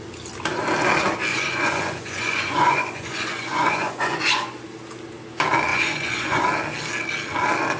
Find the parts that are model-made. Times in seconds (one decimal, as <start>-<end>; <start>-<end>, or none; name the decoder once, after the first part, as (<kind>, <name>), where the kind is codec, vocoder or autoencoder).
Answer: 1.3-4.6 (vocoder, Vocos); 5.7-6.4